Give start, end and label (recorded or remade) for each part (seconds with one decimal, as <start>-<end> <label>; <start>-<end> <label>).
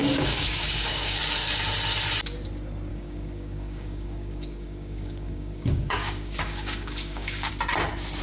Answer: 0.0-1.2 remade; 1.2-2.9 recorded; 2.9-7.5 remade; 7.5-8.2 recorded